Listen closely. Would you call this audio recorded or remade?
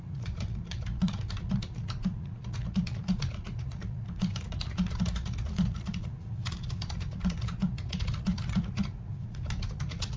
remade